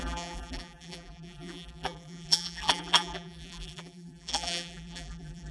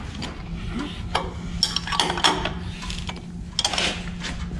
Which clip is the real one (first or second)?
second